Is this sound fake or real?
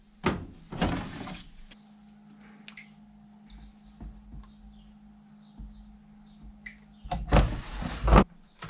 real